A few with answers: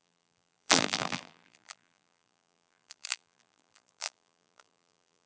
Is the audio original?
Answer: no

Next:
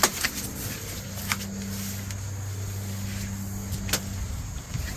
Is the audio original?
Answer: yes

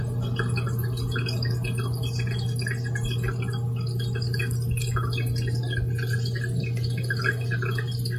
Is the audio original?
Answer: yes